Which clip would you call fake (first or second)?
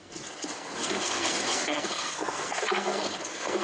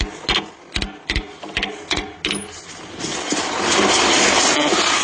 first